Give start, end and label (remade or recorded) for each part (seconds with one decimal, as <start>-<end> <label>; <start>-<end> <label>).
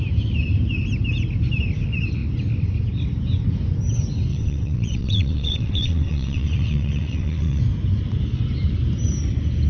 0.0-4.3 recorded; 4.3-7.6 remade; 7.6-9.7 recorded